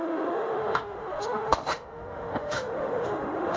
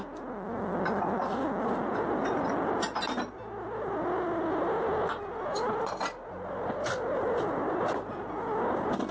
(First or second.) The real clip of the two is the second